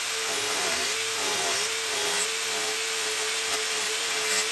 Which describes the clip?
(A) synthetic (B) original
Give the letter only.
B